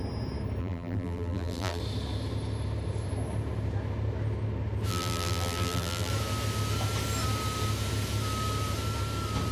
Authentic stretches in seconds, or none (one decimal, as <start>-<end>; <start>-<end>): 0.0-0.6; 1.8-4.9; 6.1-9.5